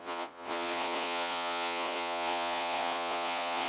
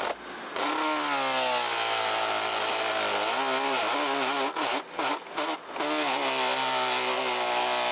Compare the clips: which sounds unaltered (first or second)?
second